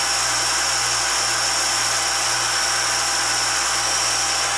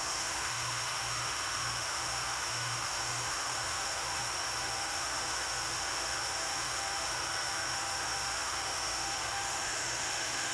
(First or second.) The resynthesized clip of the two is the second